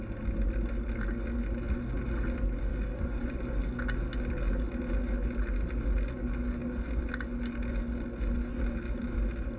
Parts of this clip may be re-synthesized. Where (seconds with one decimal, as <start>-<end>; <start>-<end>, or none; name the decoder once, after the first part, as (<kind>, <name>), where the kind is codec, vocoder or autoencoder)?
2.7-3.3 (codec, DAC)